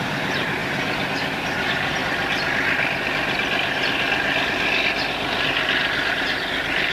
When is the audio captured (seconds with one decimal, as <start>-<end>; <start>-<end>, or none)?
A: 0.6-1.3; 2.0-6.1

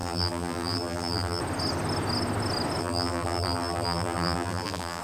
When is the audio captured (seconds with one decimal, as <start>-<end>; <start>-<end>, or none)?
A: 1.4-2.8

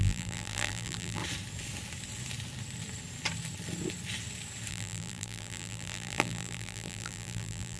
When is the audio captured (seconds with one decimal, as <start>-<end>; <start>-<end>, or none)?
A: 1.2-4.7